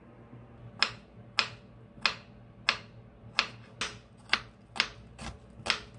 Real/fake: real